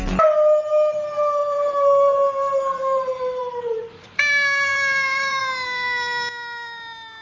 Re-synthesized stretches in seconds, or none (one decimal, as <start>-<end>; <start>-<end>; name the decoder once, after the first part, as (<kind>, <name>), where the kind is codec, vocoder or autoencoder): 1.4-4.2 (vocoder, BigVGAN v2); 4.7-5.4